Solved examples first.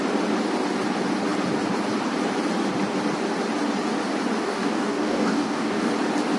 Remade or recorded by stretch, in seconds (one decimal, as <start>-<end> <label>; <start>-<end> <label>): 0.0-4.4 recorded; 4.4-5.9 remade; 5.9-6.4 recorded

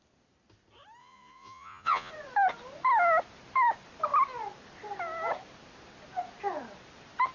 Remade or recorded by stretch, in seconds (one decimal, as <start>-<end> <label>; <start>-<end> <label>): 0.0-1.0 recorded; 1.0-2.1 remade; 2.1-7.3 recorded

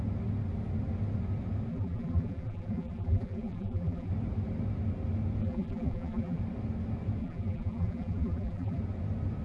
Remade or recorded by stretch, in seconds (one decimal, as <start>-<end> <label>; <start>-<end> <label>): 0.0-1.7 recorded; 1.7-4.1 remade; 4.1-5.4 recorded; 5.4-6.4 remade; 6.4-7.2 recorded; 7.2-8.8 remade; 8.8-9.4 recorded

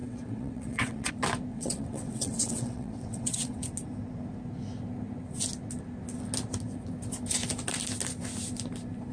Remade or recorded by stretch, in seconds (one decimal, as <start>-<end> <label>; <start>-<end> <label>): 0.0-1.1 remade; 1.1-1.5 recorded; 1.5-3.6 remade; 3.6-9.1 recorded

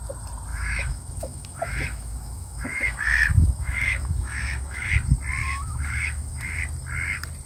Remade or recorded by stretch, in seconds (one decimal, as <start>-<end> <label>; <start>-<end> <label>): 0.0-0.5 recorded; 0.5-4.9 remade; 4.9-5.4 recorded; 5.4-6.6 remade; 6.6-7.5 recorded